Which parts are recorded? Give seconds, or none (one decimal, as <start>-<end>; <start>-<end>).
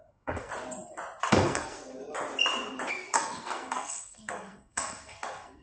0.5-1.3; 2.0-2.9